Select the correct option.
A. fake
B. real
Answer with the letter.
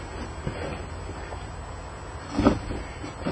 B